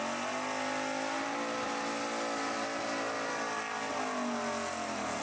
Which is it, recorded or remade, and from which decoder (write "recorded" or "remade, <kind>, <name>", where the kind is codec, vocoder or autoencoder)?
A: recorded